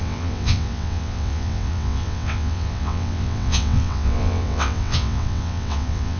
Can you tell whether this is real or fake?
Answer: fake